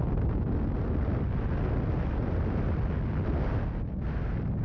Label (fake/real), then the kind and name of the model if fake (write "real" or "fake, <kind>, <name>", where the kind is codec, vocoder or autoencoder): real